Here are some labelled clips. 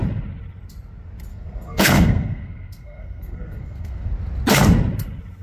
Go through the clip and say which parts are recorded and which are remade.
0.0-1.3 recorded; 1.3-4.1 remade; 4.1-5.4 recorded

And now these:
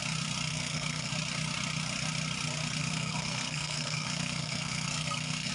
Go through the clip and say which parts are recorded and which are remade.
0.0-0.5 recorded; 0.5-1.1 remade; 1.1-2.8 recorded; 2.8-5.5 remade

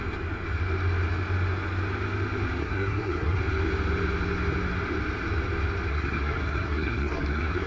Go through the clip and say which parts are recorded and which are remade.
0.0-2.6 recorded; 2.6-3.4 remade; 3.4-5.9 recorded; 5.9-7.7 remade